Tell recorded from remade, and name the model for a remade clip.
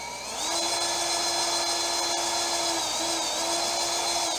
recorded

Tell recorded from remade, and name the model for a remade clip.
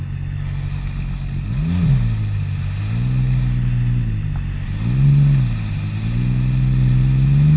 recorded